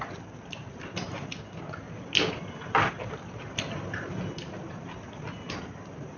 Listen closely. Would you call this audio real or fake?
real